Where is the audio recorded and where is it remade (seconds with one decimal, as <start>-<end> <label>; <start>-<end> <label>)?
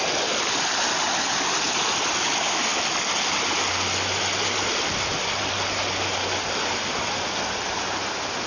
0.0-8.5 recorded